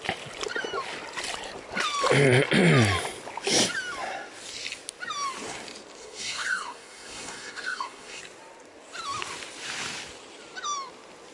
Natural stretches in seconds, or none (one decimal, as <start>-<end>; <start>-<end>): 0.0-6.0; 8.2-11.3